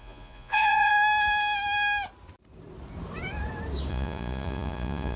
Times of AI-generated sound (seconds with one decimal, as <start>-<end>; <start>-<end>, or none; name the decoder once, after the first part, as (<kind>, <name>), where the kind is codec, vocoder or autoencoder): 0.0-0.9 (vocoder, Vocos); 3.9-5.2